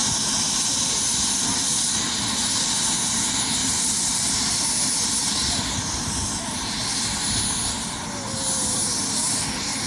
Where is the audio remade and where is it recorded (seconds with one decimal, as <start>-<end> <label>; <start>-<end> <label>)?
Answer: 0.0-0.8 remade; 0.8-3.6 recorded; 3.6-4.5 remade; 4.5-5.2 recorded; 5.2-6.8 remade; 6.8-9.9 recorded